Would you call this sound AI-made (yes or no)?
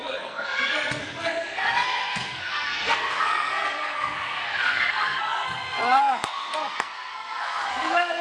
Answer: yes